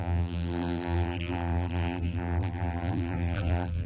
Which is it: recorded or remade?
remade